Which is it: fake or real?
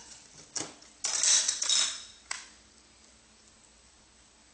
real